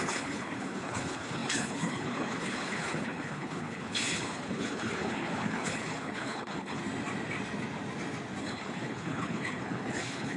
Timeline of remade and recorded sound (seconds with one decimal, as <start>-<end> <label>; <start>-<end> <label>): 0.0-6.8 remade; 6.8-8.4 recorded; 8.4-10.4 remade